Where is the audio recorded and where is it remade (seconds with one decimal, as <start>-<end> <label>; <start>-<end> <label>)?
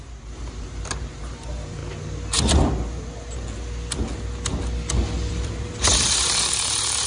0.0-1.8 remade; 1.8-5.3 recorded; 5.3-7.1 remade